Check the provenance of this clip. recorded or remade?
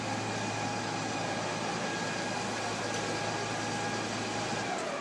recorded